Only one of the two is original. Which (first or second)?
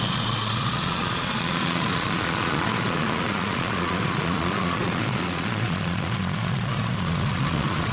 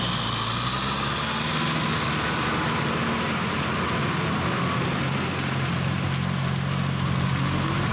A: second